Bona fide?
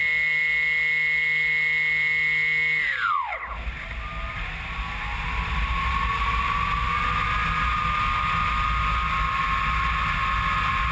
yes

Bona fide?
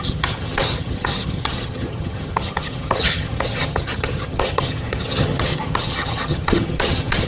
no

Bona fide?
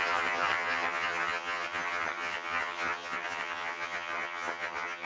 no